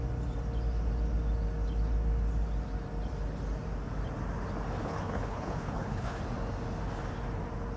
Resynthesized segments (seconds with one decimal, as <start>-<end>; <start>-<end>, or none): 4.8-6.2